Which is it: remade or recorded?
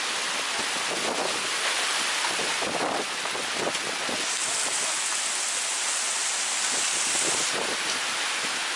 recorded